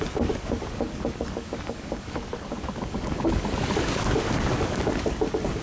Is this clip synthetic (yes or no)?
yes